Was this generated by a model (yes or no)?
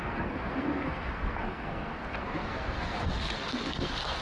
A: yes